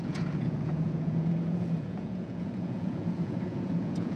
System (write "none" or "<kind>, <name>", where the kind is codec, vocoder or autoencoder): vocoder, Vocos